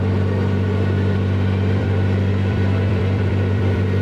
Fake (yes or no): yes